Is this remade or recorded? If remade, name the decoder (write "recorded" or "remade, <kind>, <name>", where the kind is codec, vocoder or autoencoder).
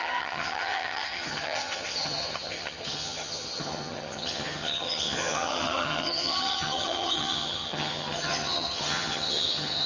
remade, vocoder, HiFi-GAN